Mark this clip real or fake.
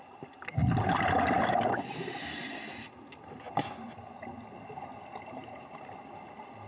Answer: real